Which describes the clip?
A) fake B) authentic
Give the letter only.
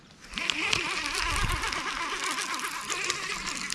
B